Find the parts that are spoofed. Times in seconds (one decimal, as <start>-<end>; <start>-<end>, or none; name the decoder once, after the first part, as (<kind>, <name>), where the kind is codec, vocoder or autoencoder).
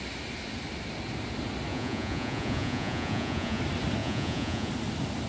1.7-3.6 (vocoder, Vocos); 4.0-4.7